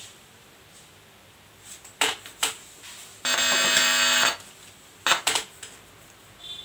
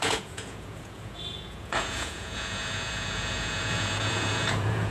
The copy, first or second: second